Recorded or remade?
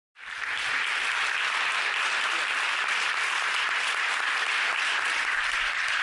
remade